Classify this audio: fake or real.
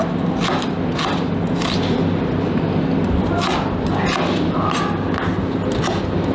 real